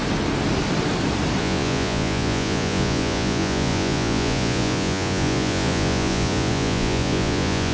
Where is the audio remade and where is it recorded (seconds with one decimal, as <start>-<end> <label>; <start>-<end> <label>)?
0.0-1.4 recorded; 1.4-7.7 remade